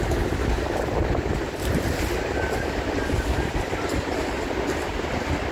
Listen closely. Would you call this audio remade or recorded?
recorded